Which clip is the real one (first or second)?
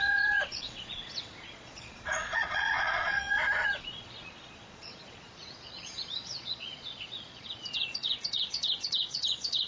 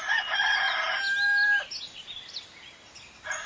second